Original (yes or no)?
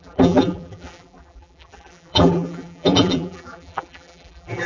no